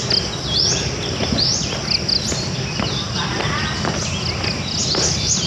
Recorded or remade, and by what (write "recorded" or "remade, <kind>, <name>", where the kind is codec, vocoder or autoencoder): recorded